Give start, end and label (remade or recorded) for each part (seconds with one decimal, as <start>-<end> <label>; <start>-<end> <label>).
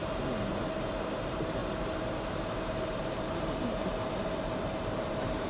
0.0-5.5 recorded